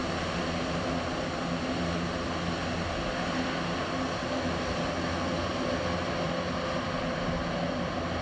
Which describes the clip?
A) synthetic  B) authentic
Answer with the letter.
B